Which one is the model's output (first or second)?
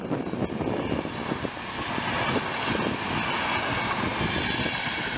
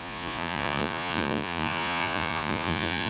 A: second